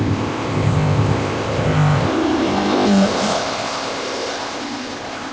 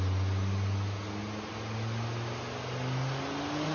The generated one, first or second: first